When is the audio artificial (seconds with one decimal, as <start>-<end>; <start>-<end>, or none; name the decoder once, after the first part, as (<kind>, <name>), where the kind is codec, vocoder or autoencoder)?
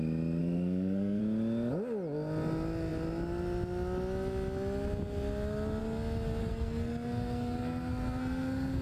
0.4-1.2 (codec, SNAC); 6.4-8.8